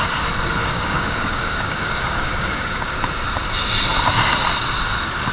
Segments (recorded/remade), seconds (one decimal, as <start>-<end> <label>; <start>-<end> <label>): 0.0-0.6 recorded; 0.6-2.9 remade; 2.9-5.3 recorded